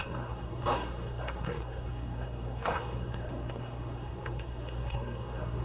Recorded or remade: remade